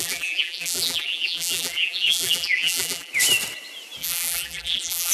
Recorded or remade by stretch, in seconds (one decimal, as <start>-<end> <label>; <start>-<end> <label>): 0.0-3.1 remade; 3.1-4.0 recorded; 4.0-5.1 remade